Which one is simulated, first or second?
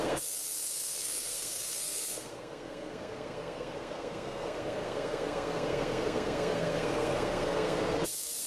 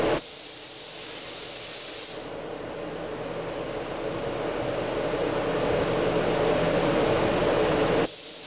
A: first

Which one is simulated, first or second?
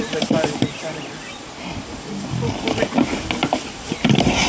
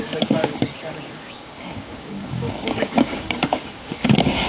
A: second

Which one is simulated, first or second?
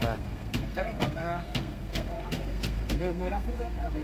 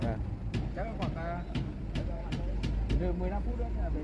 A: first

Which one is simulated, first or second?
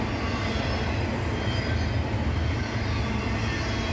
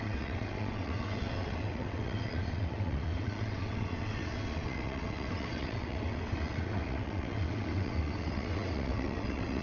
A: second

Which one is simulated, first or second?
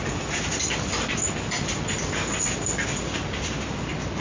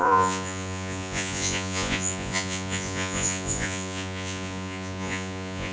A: second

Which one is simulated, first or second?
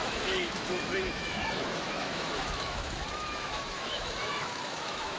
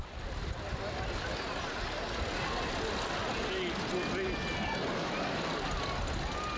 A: first